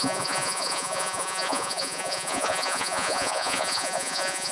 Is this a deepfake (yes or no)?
yes